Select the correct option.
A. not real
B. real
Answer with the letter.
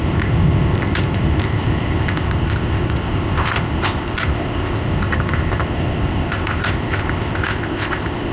A